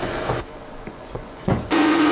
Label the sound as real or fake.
fake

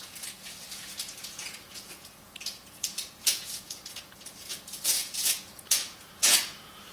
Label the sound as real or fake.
fake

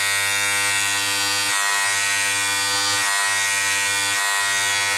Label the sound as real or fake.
real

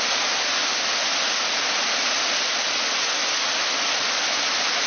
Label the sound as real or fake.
real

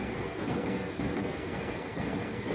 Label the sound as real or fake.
fake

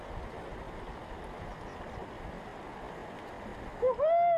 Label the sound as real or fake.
real